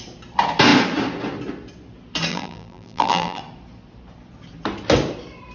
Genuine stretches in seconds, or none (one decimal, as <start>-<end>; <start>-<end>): 0.0-2.3; 3.4-5.5